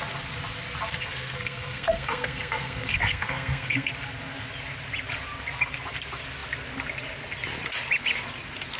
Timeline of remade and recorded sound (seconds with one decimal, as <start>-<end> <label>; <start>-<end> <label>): 0.0-0.9 recorded; 0.9-3.9 remade; 3.9-8.8 recorded